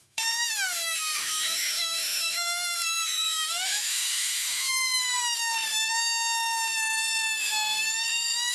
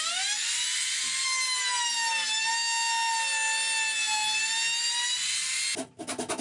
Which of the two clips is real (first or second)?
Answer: second